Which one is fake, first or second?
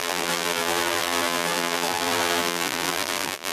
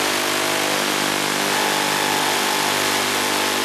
first